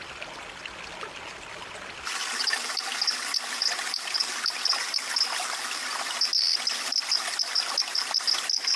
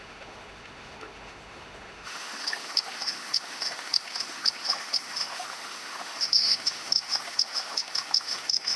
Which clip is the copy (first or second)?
second